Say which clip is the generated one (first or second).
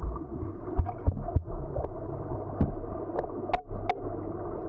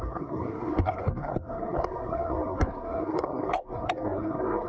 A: second